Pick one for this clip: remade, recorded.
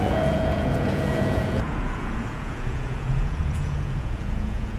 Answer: remade